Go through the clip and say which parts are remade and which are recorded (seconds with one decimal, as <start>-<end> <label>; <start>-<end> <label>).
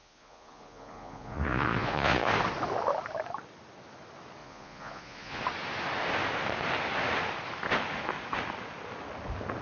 0.0-2.3 remade; 2.3-4.4 recorded; 4.4-5.4 remade; 5.4-9.6 recorded